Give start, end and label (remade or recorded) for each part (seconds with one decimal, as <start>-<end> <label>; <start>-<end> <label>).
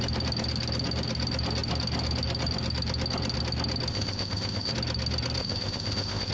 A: 0.0-3.9 recorded; 3.9-4.7 remade; 4.7-5.4 recorded; 5.4-6.3 remade